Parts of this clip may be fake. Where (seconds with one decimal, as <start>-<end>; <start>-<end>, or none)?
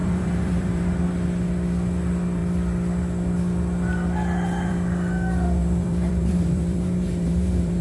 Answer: 0.0-0.9; 5.6-7.8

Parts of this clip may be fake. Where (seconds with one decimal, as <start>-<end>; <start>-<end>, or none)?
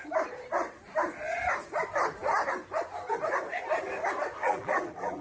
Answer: 4.4-5.2